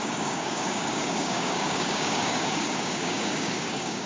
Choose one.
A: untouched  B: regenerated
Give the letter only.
B